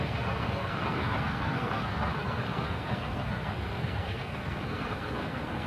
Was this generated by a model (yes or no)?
yes